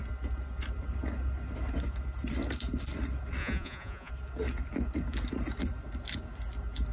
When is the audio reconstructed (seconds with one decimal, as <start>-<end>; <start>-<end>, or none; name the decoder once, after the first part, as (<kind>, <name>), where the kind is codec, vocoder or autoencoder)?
3.4-4.1 (vocoder, Vocos)